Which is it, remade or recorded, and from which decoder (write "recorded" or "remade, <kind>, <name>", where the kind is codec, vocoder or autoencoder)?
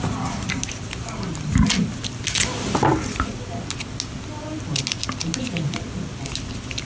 recorded